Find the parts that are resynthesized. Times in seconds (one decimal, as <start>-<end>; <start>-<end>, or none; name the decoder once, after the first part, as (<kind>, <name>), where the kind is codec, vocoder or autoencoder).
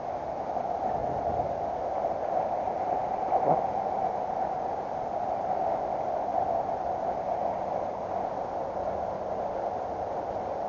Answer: none